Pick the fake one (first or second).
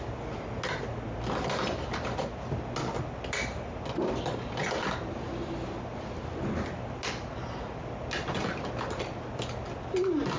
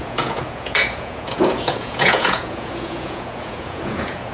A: second